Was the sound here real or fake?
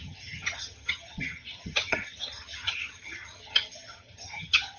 fake